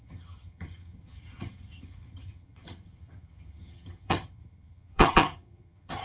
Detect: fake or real fake